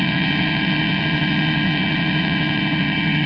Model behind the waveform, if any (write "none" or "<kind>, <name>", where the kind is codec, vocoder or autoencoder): vocoder, WaveNeXt